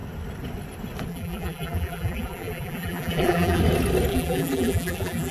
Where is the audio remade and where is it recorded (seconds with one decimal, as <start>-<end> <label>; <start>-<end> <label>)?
0.0-1.1 recorded; 1.1-3.6 remade; 3.6-4.1 recorded; 4.1-5.3 remade